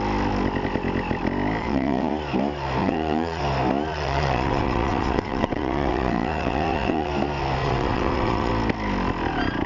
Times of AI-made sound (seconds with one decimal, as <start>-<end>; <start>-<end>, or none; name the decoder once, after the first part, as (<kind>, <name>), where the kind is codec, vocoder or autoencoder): 1.6-2.1 (vocoder, WaveNeXt); 2.8-3.4; 3.9-7.1; 7.6-8.5